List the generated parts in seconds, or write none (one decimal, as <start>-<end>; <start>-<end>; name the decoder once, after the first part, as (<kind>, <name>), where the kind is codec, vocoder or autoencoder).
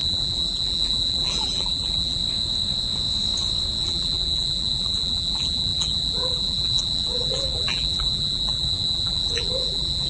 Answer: 0.0-2.2 (vocoder, BigVGAN v2); 3.8-10.1